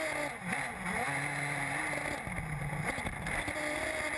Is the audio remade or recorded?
recorded